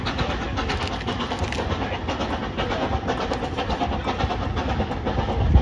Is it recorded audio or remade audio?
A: recorded